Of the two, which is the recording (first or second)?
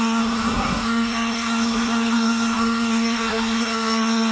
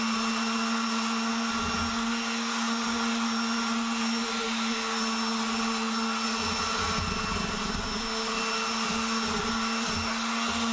second